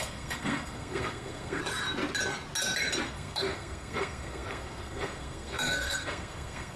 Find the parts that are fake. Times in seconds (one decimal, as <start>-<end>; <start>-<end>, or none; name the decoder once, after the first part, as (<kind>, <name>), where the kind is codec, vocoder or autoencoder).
0.0-1.6 (codec, SNAC); 3.0-6.8